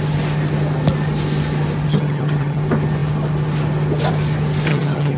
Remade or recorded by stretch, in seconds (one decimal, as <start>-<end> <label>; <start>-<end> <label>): 0.0-1.9 recorded; 1.9-2.6 remade; 2.6-4.7 recorded; 4.7-5.2 remade